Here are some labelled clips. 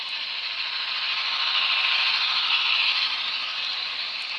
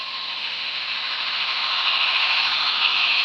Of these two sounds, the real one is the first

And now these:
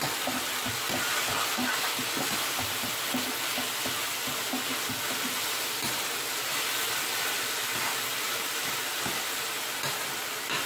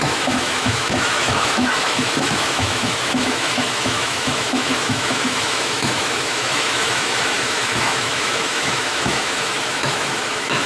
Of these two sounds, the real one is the first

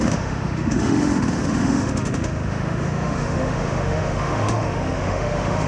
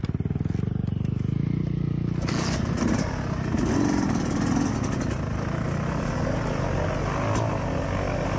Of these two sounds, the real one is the second